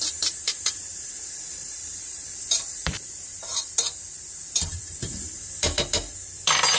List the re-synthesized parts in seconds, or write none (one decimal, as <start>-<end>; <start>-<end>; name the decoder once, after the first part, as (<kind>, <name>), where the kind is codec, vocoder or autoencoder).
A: 0.0-6.8 (vocoder, BigVGAN v2)